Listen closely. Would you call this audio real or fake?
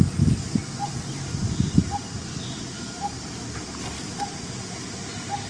real